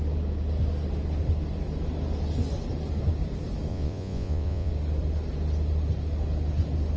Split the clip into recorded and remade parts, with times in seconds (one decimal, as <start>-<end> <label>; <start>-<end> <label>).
0.0-3.7 recorded; 3.7-4.7 remade; 4.7-7.0 recorded